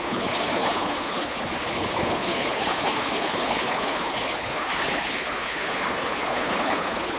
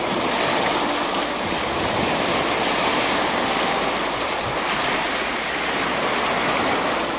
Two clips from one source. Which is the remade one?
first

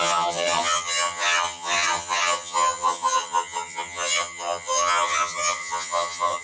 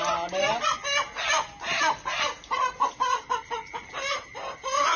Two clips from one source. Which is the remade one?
first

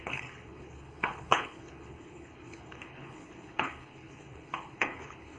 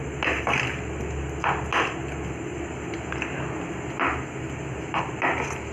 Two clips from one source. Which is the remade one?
first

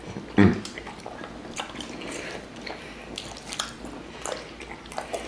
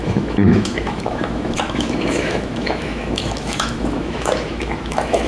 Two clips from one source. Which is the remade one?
second